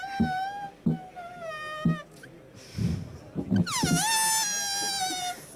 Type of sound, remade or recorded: recorded